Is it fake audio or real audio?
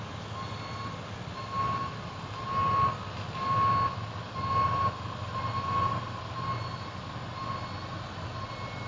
real